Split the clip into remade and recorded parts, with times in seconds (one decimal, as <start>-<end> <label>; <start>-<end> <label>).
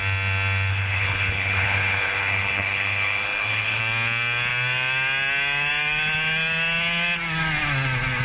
0.0-0.7 recorded; 0.7-3.8 remade; 3.8-8.2 recorded